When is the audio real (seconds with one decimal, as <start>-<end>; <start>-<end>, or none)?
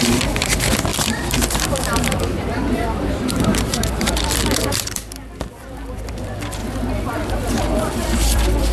6.6-7.5